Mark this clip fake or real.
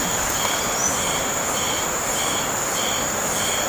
real